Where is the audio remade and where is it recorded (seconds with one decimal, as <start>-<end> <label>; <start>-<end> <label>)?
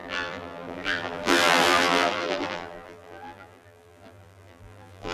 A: 0.0-5.1 remade